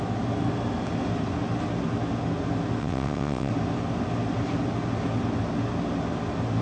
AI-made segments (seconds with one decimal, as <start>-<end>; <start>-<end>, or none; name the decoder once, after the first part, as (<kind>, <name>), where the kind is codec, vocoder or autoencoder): 2.8-3.5 (vocoder, WaveNeXt)

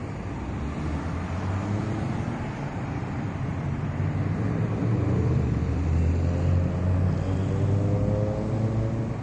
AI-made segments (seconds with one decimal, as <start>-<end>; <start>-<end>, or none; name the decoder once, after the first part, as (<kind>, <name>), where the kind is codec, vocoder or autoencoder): 1.8-6.1 (vocoder, BigVGAN v2)

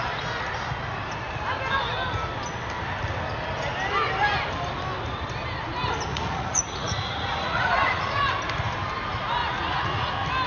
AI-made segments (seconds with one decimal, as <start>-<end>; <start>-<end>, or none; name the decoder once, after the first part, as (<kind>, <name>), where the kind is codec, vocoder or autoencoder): 6.1-8.3 (vocoder, Vocos); 9.4-10.1

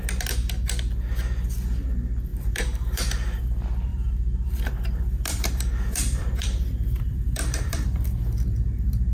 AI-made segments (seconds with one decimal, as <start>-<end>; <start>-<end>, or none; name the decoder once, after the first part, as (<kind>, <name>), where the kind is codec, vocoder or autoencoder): 2.3-3.4 (vocoder, BigVGAN v2); 3.9-9.1